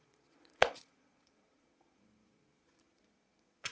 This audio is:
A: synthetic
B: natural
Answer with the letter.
A